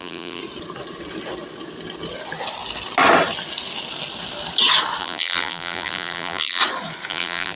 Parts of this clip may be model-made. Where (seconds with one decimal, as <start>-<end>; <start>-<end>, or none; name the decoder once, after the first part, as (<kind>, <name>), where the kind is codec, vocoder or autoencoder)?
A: 0.0-0.4 (vocoder, BigVGAN v2); 5.0-6.6; 7.1-7.6